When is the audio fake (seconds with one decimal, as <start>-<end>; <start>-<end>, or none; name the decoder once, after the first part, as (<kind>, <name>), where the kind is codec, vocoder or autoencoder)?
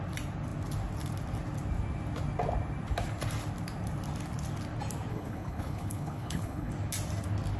5.1-6.7 (codec, HILCodec)